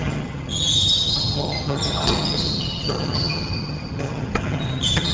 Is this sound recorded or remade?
remade